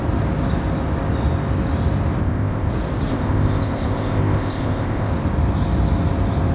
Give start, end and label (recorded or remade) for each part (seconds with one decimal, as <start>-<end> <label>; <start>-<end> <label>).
0.0-2.2 recorded; 2.2-2.7 remade; 2.7-3.1 recorded; 3.1-5.1 remade; 5.1-6.5 recorded